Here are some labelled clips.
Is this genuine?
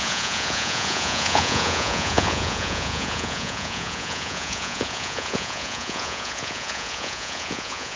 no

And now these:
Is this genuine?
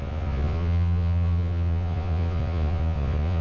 no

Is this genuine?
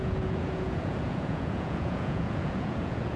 no